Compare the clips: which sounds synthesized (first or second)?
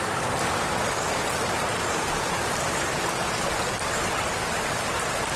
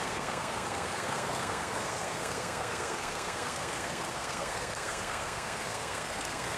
second